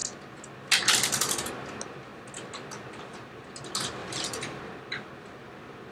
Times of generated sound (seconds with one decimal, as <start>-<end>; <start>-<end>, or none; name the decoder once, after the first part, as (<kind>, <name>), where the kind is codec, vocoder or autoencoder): 4.0-4.6 (vocoder, BigVGAN v2)